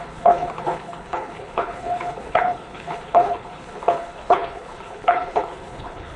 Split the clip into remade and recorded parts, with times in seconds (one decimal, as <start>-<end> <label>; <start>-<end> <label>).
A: 0.0-6.2 remade